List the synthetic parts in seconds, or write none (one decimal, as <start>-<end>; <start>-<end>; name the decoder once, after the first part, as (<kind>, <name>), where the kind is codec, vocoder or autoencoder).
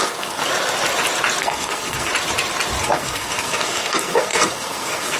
0.0-0.4 (codec, SNAC); 1.4-2.1; 2.8-5.2